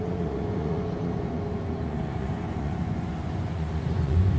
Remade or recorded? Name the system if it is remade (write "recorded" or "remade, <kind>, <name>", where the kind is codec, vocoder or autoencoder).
remade, vocoder, Vocos